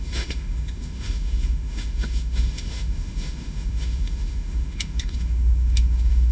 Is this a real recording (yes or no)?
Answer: no